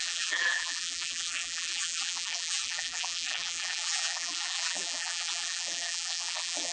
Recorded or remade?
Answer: remade